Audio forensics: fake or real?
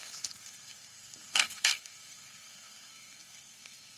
fake